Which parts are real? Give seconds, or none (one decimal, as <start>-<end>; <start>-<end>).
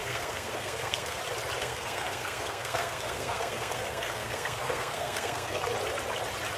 1.2-1.6; 5.6-6.6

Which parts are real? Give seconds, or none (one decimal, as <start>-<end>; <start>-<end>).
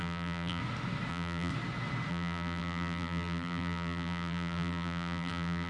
0.6-1.1; 1.5-2.1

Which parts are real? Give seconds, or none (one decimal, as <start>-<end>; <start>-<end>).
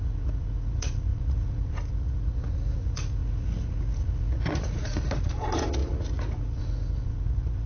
none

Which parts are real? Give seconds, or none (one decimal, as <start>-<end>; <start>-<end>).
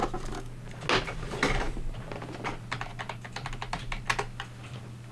0.0-5.1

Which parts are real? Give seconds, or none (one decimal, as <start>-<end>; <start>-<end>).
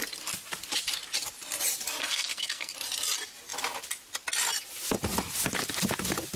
0.0-2.0; 2.7-6.4